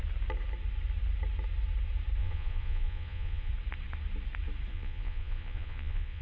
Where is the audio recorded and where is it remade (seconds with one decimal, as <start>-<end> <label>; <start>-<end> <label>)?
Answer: 0.0-2.2 recorded; 2.2-3.5 remade; 3.5-4.7 recorded; 4.7-6.2 remade